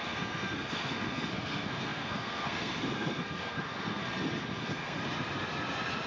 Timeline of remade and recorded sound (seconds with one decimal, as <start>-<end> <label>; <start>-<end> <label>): 0.0-4.0 remade; 4.0-4.6 recorded; 4.6-5.0 remade; 5.0-6.1 recorded